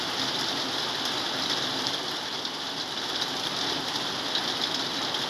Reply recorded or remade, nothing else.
recorded